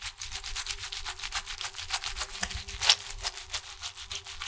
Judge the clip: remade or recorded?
recorded